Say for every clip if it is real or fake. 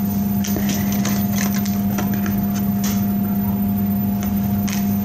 fake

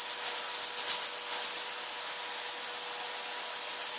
real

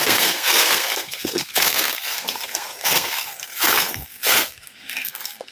fake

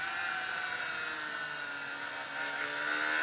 real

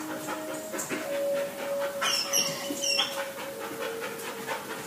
real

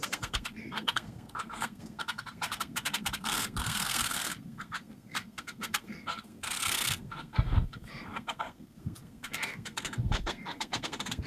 fake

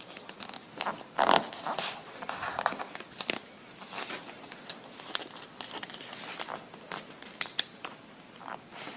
real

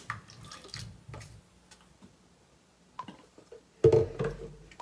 real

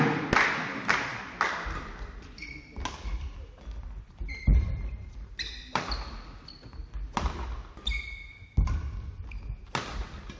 real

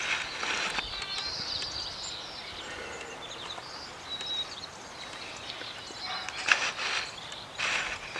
real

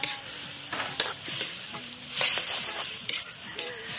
fake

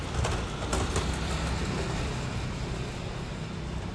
real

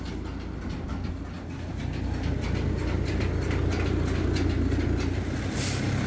real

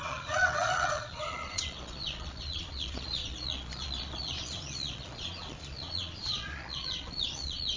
fake